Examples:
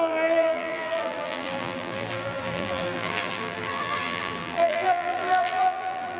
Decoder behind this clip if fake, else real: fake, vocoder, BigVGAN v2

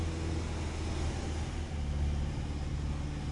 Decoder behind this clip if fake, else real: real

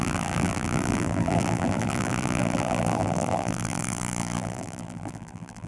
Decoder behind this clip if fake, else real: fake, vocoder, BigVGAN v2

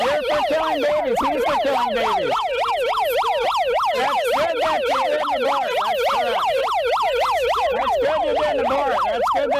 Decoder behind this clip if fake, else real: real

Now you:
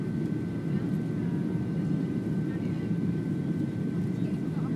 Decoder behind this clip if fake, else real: real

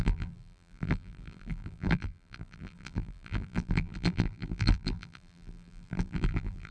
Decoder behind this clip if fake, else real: fake, vocoder, BigVGAN v2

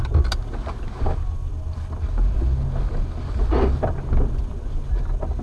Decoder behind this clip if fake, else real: real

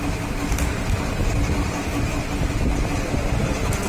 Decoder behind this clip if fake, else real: real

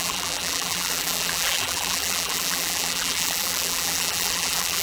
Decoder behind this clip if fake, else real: fake, vocoder, BigVGAN v2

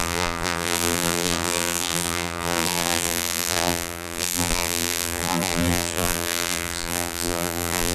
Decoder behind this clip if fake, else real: fake, vocoder, BigVGAN v2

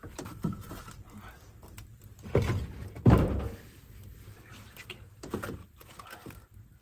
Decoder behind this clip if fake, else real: real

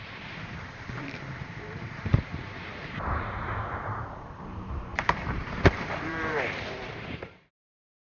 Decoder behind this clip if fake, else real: fake, vocoder, BigVGAN v2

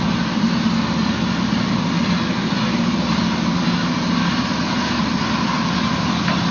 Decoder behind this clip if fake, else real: real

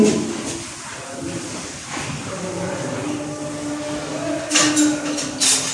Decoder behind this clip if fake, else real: real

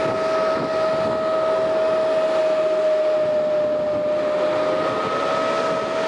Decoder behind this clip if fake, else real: real